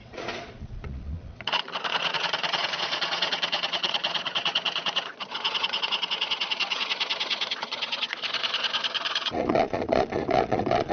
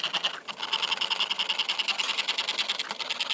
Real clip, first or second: second